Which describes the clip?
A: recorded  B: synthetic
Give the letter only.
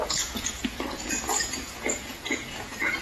B